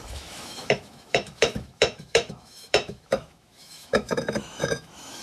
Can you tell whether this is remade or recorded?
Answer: remade